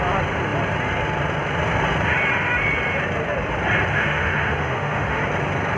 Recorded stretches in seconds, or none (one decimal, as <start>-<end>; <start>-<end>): 0.0-3.9; 5.2-5.8